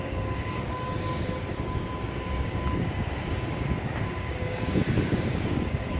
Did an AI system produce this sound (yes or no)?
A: yes